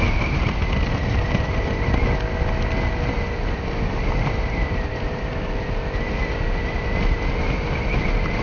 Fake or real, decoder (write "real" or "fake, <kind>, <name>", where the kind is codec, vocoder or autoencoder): real